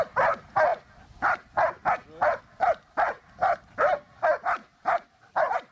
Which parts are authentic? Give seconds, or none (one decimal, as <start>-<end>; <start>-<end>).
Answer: 0.0-5.7